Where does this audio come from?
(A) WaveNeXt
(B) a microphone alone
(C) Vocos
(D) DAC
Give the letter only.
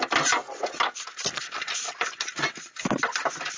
B